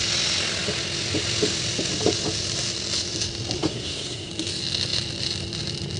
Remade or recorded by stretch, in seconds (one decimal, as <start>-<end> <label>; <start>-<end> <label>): 0.0-3.6 recorded; 3.6-4.3 remade; 4.3-6.0 recorded